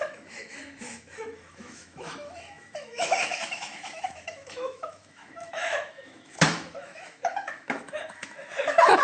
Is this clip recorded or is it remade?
remade